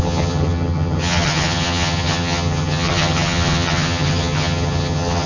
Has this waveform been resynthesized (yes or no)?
yes